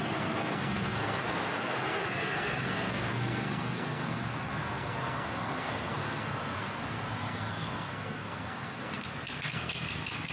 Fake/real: fake